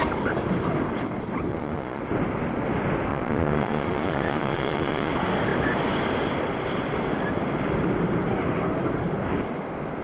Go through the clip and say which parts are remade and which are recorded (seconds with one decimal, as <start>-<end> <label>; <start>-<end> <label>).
0.0-1.5 recorded; 1.5-2.0 remade; 2.0-3.1 recorded; 3.1-5.1 remade; 5.1-10.0 recorded